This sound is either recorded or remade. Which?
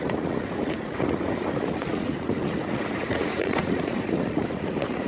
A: remade